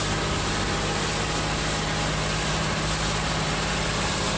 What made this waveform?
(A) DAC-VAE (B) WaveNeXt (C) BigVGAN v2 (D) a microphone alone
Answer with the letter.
D